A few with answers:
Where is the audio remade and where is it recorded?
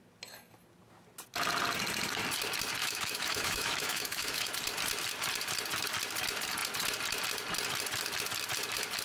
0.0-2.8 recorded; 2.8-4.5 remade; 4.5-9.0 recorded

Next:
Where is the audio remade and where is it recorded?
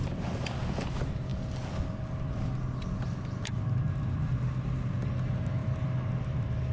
0.0-6.7 recorded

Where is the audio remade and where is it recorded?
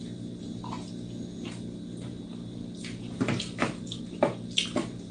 0.0-5.1 recorded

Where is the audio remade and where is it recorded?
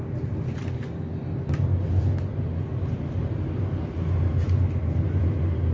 0.0-5.7 recorded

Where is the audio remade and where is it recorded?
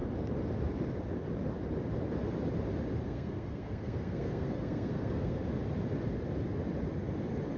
0.0-3.0 recorded; 3.0-5.4 remade; 5.4-7.6 recorded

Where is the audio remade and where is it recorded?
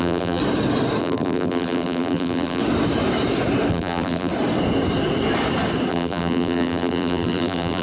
0.0-0.4 remade; 0.4-1.0 recorded; 1.0-2.6 remade; 2.6-3.7 recorded; 3.7-4.3 remade; 4.3-5.9 recorded; 5.9-7.8 remade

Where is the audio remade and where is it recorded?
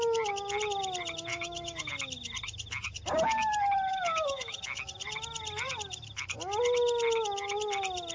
0.0-1.3 recorded; 1.3-1.9 remade; 1.9-3.9 recorded; 3.9-4.6 remade; 4.6-8.1 recorded